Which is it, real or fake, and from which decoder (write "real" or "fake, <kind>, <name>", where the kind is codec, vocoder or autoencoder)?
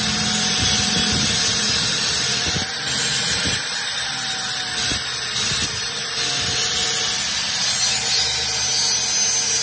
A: real